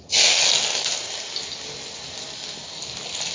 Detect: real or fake real